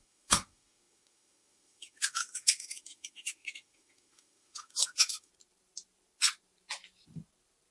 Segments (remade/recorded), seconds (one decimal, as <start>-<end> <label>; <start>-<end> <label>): 0.0-5.3 remade; 5.3-7.7 recorded